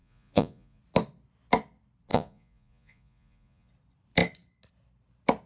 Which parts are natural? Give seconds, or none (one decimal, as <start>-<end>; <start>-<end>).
0.8-2.1; 3.7-5.5